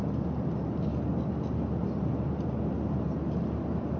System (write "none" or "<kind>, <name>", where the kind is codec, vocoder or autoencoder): none